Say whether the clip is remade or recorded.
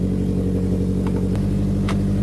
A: recorded